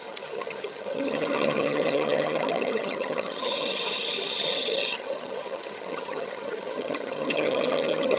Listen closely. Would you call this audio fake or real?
fake